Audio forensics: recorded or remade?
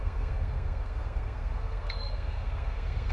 remade